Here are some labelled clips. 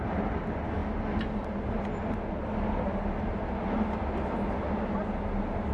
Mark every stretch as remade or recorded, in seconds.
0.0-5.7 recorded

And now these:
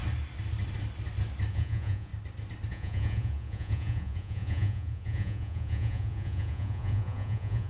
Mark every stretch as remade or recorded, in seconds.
0.0-1.5 recorded; 1.5-2.1 remade; 2.1-2.7 recorded; 2.7-7.7 remade

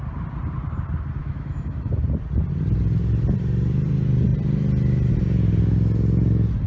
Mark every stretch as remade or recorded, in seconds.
0.0-1.2 recorded; 1.2-1.9 remade; 1.9-6.7 recorded